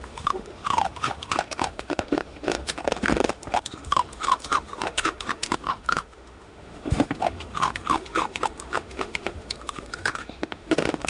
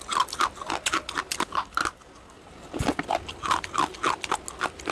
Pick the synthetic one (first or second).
first